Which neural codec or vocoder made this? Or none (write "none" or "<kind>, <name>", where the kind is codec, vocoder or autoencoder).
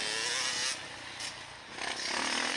none